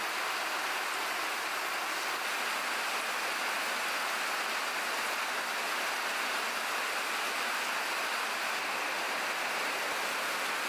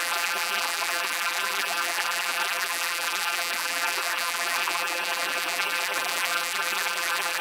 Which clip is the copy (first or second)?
second